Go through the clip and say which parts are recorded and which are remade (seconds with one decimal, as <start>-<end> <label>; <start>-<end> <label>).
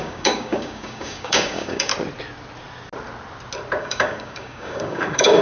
0.0-1.9 remade; 1.9-3.8 recorded; 3.8-5.4 remade